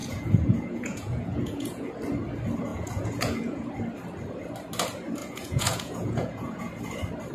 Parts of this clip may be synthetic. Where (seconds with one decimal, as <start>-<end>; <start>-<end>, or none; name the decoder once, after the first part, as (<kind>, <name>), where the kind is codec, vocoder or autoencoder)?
0.0-1.9 (vocoder, Vocos); 2.7-3.7; 5.2-6.7